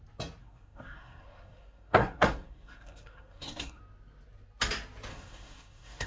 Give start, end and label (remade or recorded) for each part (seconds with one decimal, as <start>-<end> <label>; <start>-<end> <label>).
0.0-0.4 recorded; 0.4-3.8 remade; 3.8-5.1 recorded; 5.1-6.1 remade